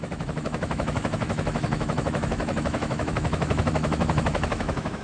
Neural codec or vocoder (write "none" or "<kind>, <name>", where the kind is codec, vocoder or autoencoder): autoencoder, DAC-VAE